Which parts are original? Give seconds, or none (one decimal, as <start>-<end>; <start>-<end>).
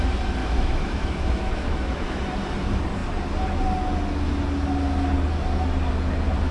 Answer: 0.0-0.4; 2.2-6.5